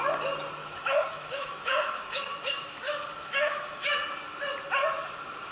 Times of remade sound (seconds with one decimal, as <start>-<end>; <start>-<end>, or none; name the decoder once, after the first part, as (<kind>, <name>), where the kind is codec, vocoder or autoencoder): 0.6-3.9 (autoencoder, DAC-VAE)